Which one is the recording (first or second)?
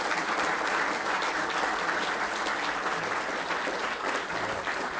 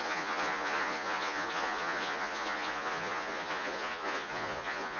first